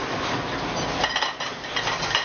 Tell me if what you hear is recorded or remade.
recorded